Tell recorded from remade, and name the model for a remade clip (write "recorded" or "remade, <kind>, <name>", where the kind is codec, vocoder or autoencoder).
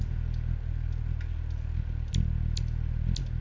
recorded